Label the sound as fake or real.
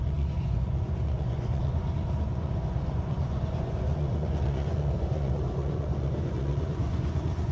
fake